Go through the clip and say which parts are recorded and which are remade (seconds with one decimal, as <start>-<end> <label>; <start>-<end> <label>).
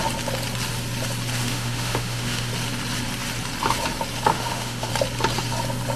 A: 0.0-1.4 recorded; 1.4-2.5 remade; 2.5-4.3 recorded; 4.3-4.9 remade; 4.9-6.0 recorded